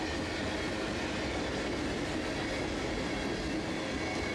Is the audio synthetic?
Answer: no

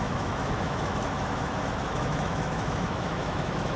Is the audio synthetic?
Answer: yes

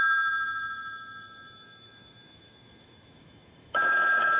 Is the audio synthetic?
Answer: yes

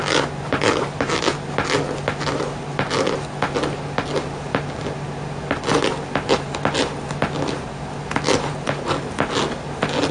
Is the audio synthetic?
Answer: no